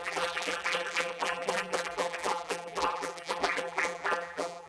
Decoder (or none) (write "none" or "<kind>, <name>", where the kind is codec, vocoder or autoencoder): vocoder, BigVGAN v2